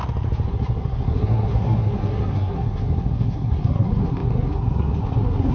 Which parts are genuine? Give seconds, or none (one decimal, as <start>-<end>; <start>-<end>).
0.0-0.5